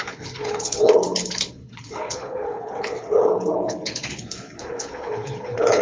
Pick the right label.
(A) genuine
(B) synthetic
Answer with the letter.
B